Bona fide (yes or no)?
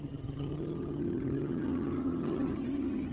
no